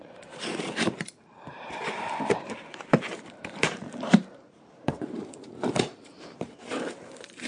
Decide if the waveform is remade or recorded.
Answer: remade